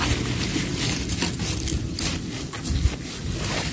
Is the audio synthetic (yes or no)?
no